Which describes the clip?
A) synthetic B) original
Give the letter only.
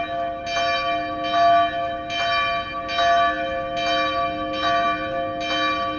B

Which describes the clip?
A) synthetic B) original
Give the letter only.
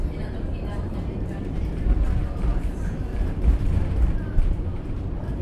A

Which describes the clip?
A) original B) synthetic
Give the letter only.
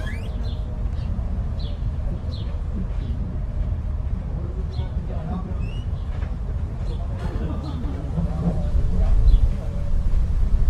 A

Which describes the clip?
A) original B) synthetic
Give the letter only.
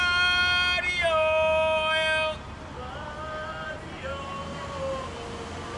A